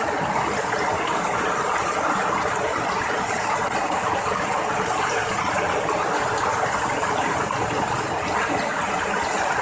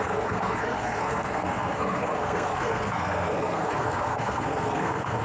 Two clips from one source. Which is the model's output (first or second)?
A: second